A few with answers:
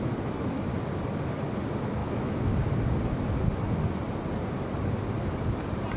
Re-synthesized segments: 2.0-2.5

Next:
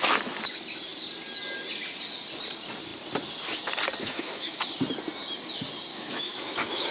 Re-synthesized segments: 4.0-4.6; 5.9-6.9

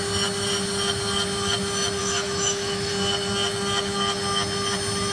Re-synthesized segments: 2.0-2.9